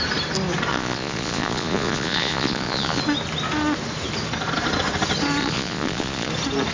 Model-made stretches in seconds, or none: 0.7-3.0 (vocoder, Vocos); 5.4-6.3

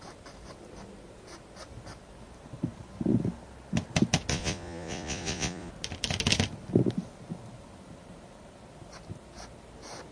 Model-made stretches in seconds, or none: 4.3-5.7 (vocoder, Vocos)